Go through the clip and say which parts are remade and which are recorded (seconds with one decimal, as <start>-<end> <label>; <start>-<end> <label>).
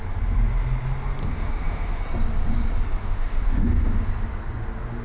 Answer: 0.0-1.2 recorded; 1.2-2.0 remade; 2.0-3.0 recorded; 3.0-4.1 remade; 4.1-5.0 recorded